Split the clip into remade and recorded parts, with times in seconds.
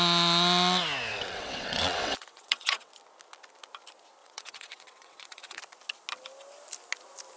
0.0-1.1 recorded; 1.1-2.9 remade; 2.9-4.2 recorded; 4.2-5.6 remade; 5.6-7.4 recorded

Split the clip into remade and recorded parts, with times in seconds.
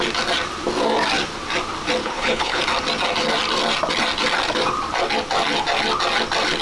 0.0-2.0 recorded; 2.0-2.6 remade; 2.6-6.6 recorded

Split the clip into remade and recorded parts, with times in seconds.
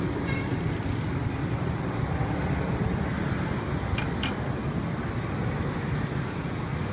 0.0-6.9 recorded